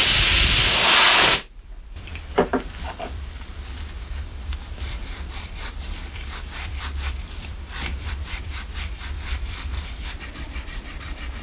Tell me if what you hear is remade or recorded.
remade